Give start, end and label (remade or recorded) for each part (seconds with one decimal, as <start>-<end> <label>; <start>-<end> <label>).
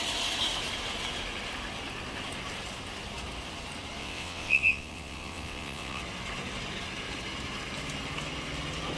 0.0-4.0 recorded; 4.0-6.0 remade; 6.0-9.0 recorded